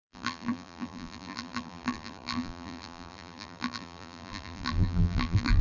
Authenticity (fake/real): fake